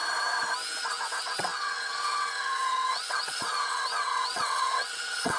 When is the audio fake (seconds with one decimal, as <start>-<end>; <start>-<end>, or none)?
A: 0.8-5.4